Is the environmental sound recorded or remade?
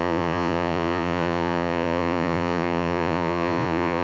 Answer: remade